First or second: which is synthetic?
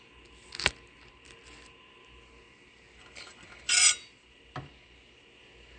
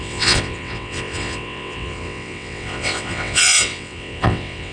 second